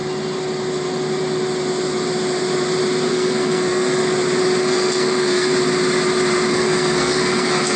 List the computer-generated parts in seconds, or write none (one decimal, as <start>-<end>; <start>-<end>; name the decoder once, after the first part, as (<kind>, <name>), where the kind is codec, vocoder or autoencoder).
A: 3.1-4.0 (codec, SNAC); 4.6-5.5; 6.5-7.8